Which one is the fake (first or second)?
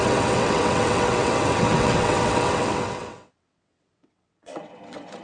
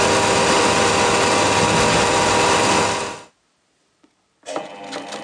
first